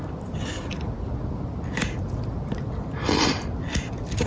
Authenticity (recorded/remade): recorded